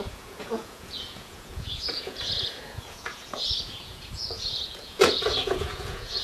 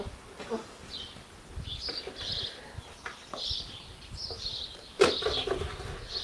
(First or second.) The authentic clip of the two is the second